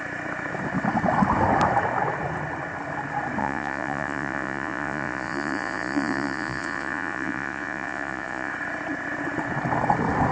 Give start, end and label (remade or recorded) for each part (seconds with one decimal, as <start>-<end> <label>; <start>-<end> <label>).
0.0-3.4 recorded; 3.4-8.5 remade; 8.5-10.3 recorded